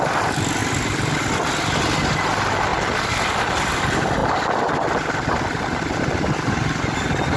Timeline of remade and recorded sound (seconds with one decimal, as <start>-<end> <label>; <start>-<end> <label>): 0.0-7.4 recorded